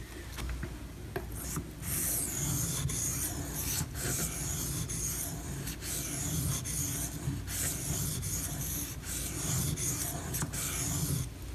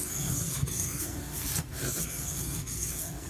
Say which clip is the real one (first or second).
first